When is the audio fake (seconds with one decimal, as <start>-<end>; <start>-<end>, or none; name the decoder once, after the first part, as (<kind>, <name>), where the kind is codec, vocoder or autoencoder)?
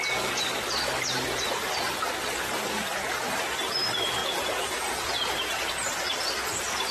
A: 4.2-6.0 (vocoder, Vocos)